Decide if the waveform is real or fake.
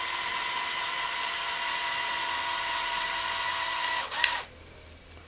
real